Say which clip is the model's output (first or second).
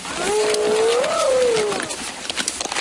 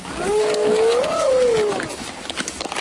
second